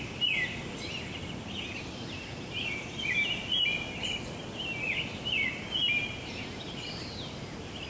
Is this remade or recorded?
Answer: recorded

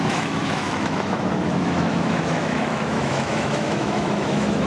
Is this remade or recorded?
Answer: remade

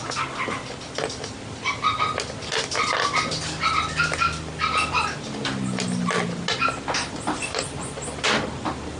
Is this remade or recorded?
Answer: recorded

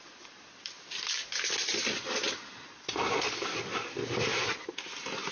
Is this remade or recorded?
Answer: recorded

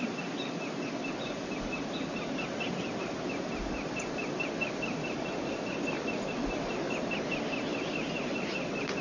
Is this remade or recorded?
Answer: recorded